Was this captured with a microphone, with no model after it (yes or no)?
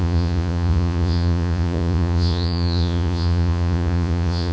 no